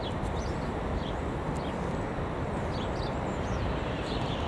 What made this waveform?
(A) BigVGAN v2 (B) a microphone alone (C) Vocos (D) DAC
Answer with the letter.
A